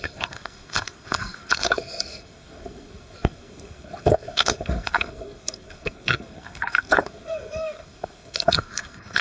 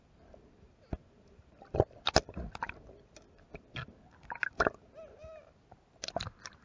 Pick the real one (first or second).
second